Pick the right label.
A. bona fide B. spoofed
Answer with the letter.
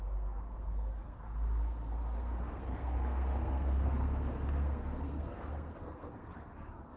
B